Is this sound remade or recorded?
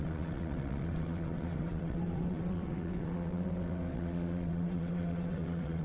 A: remade